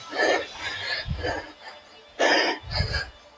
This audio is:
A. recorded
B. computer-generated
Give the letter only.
A